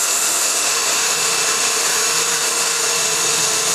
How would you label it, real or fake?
fake